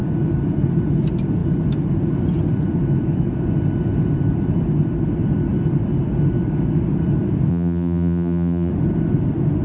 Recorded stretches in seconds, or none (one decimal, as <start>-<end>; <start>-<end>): 0.0-7.5; 8.7-9.6

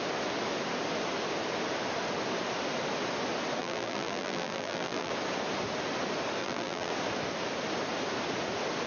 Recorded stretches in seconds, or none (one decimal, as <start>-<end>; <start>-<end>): 0.0-3.6; 5.1-6.4; 6.9-8.9

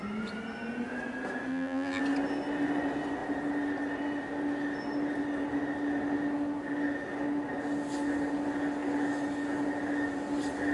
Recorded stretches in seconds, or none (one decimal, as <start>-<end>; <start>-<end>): 0.0-1.5; 2.0-10.7

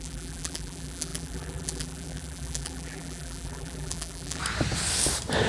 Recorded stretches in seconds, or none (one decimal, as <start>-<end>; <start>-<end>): 4.4-5.5

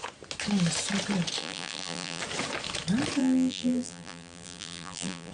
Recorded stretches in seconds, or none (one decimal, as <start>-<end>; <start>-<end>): 0.0-1.4; 2.2-3.2

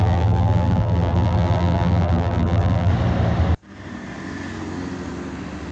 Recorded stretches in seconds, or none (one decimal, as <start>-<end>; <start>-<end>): 2.9-5.7

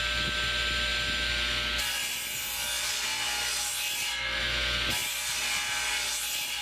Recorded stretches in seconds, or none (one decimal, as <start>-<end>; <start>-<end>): 0.0-6.6